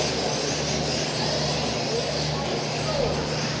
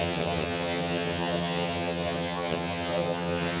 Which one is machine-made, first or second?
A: second